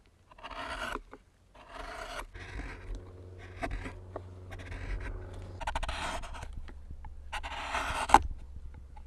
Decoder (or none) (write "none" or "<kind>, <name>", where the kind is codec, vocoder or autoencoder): none